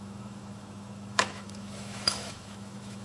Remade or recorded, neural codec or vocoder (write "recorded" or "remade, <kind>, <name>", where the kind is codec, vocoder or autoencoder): remade, autoencoder, DAC-VAE